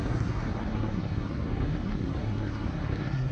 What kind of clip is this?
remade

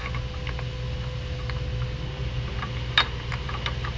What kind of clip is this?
recorded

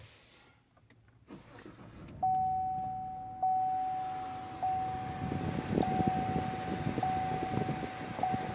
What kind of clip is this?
recorded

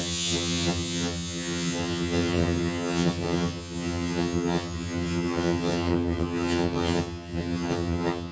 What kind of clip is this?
remade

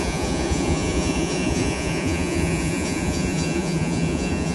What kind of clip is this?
remade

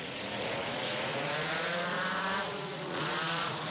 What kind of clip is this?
remade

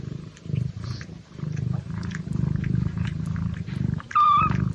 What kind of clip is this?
remade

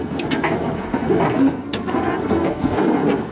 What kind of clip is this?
remade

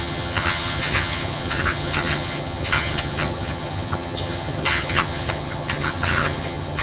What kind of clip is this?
remade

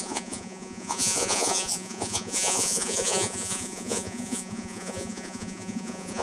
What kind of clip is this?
remade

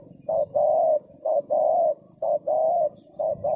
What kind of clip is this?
recorded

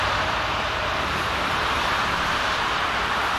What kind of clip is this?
remade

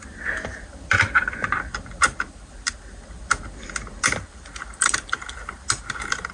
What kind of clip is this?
recorded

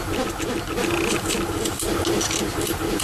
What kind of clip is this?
recorded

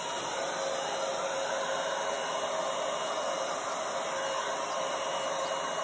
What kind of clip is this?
recorded